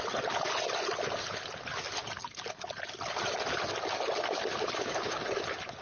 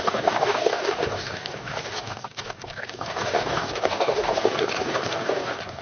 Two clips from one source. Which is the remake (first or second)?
second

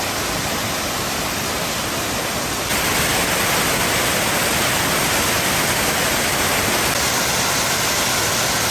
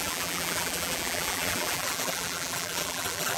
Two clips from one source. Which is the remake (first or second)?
second